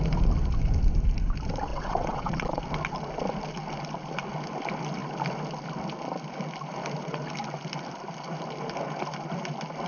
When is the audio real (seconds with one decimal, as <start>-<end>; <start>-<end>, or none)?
0.0-1.7; 2.6-9.9